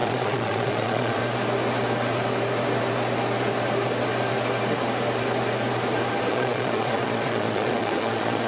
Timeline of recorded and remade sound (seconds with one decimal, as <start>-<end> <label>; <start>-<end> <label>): 0.0-1.2 remade; 1.2-6.3 recorded; 6.3-8.5 remade